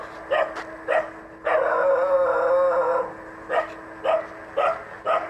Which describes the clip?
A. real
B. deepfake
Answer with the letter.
A